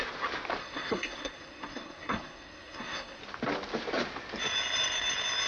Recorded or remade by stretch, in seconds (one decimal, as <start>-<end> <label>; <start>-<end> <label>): 0.0-0.6 recorded; 0.6-3.2 remade; 3.2-5.5 recorded